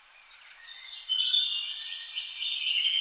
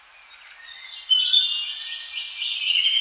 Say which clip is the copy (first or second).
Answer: first